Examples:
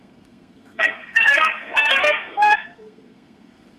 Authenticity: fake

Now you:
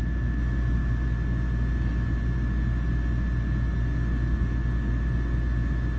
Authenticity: real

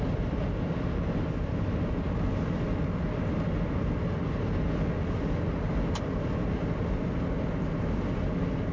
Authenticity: real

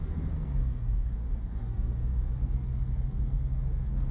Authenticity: fake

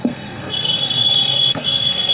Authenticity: fake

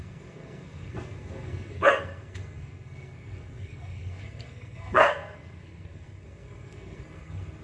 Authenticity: fake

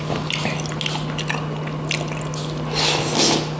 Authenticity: real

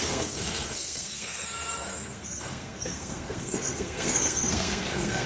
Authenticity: fake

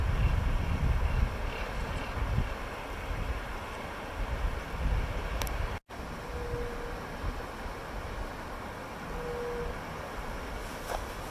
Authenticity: real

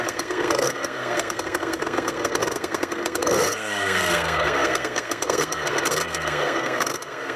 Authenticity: fake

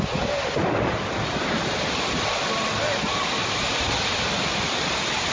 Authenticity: real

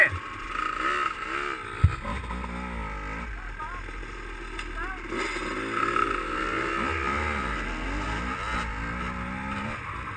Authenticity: real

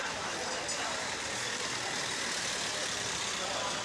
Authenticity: real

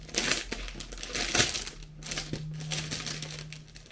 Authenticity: real